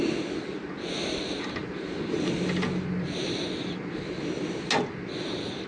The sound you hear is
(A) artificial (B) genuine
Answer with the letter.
B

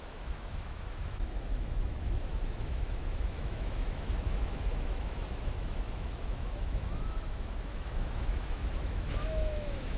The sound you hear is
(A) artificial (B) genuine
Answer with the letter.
A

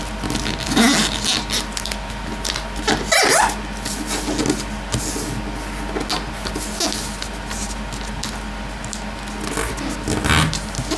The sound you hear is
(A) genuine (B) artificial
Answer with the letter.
A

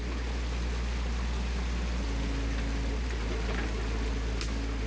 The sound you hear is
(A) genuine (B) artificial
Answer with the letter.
A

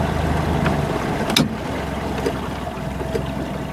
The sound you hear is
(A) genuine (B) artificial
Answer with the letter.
A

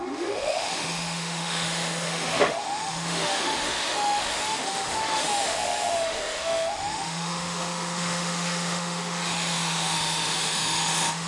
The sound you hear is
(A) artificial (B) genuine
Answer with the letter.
A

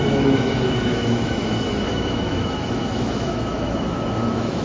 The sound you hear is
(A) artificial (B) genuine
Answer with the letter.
A